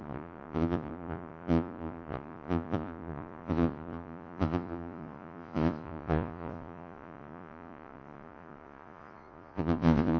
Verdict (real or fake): fake